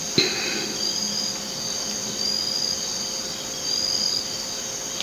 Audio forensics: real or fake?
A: real